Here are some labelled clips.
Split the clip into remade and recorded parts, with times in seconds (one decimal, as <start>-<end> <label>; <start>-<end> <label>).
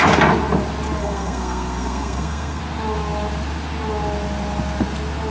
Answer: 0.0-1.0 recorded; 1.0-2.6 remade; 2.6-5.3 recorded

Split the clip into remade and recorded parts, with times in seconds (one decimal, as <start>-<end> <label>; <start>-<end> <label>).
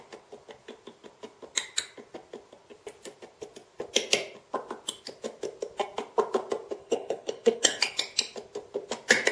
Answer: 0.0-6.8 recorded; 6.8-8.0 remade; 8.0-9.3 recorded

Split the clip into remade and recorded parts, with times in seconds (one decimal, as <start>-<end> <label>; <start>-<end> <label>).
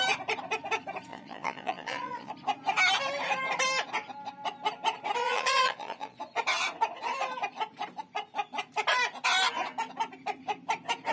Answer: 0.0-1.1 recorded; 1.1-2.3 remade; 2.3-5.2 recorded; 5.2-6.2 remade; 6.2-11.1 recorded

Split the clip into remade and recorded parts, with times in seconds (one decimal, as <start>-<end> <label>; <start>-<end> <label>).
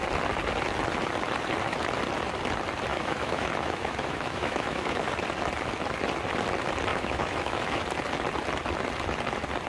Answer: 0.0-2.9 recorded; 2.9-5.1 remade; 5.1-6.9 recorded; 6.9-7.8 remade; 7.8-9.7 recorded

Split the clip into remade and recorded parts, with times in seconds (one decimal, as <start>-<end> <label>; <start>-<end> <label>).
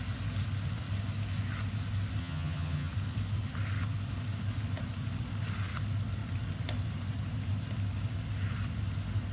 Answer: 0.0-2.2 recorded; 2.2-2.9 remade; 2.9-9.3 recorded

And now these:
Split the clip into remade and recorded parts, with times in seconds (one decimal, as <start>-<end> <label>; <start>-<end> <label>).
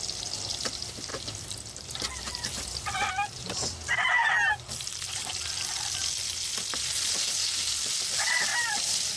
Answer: 0.0-8.5 recorded; 8.5-9.2 remade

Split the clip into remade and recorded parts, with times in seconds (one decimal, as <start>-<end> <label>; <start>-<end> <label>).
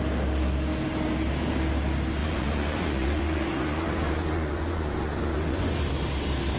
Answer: 0.0-2.2 recorded; 2.2-5.7 remade; 5.7-6.6 recorded